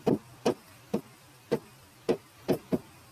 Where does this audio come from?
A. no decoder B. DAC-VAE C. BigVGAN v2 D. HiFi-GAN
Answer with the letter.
A